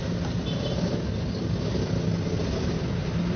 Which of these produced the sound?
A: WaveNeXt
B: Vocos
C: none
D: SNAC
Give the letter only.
C